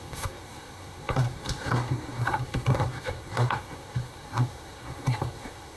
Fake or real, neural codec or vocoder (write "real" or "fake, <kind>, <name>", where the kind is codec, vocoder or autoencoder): fake, codec, SNAC